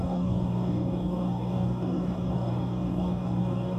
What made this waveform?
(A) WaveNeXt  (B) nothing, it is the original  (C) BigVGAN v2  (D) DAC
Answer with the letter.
D